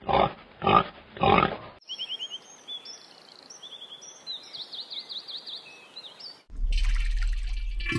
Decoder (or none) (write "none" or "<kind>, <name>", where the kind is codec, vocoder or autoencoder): none